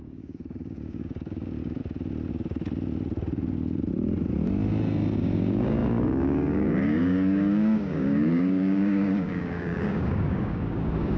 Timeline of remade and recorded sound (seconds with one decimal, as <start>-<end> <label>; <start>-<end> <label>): 0.0-1.8 remade; 1.8-5.2 recorded; 5.2-11.2 remade